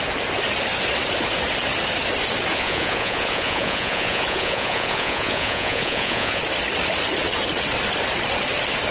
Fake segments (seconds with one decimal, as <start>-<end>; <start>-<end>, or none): 2.5-6.4